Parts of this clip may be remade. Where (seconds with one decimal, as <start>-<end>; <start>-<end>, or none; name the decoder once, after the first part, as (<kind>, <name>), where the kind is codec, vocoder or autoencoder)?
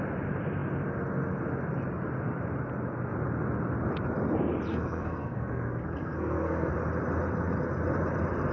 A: 4.7-6.7 (codec, SNAC)